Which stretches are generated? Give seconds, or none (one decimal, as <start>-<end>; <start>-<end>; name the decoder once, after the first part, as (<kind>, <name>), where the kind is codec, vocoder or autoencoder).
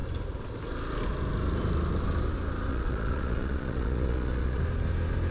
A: 2.7-4.6 (vocoder, Vocos)